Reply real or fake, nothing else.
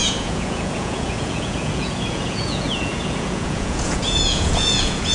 fake